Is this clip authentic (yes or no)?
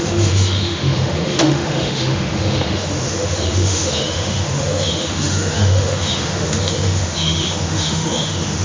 no